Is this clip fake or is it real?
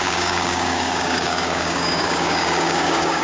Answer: fake